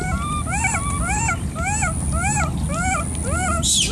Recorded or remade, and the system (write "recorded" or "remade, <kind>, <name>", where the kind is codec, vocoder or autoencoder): recorded